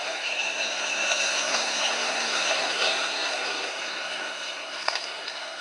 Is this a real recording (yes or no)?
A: no